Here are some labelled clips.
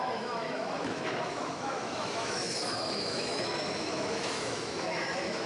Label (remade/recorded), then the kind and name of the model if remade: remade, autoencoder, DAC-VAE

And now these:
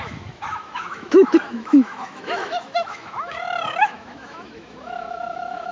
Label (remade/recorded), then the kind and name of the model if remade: remade, autoencoder, DAC-VAE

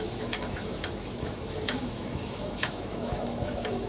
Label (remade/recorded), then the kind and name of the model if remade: remade, autoencoder, DAC-VAE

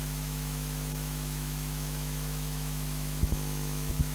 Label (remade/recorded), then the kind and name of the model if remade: remade, autoencoder, DAC-VAE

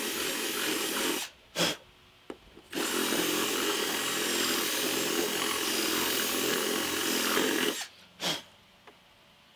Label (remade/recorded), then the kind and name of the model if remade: recorded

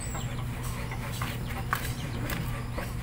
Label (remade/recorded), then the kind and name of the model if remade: recorded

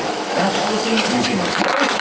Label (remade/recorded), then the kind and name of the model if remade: remade, autoencoder, DAC-VAE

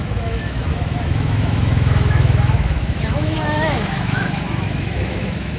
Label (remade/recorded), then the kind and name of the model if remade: remade, autoencoder, DAC-VAE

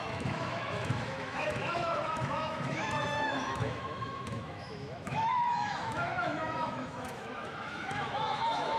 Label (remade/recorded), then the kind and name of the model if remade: remade, autoencoder, DAC-VAE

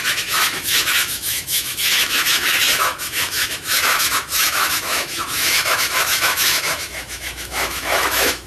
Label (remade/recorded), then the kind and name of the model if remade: remade, autoencoder, DAC-VAE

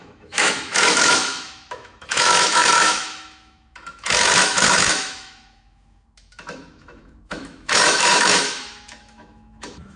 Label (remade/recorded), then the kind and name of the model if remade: remade, autoencoder, DAC-VAE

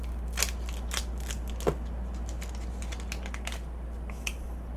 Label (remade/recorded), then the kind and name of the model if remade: recorded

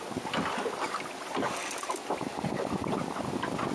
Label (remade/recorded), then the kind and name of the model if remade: recorded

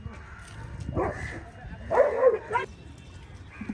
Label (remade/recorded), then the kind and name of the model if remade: recorded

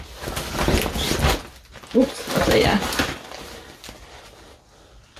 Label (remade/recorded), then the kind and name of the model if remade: recorded